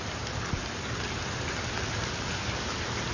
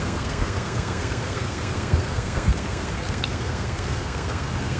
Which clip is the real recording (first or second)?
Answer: first